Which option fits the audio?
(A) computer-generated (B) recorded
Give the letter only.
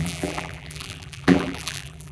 A